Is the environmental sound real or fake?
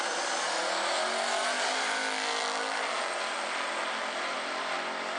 real